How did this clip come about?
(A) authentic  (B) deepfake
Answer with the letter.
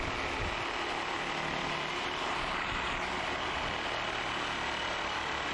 A